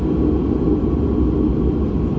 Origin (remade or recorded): recorded